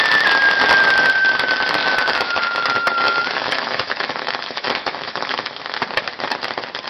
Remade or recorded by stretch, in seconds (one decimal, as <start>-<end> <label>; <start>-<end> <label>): 0.0-1.8 recorded; 1.8-5.8 remade; 5.8-6.9 recorded